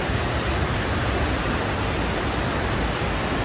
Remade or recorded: recorded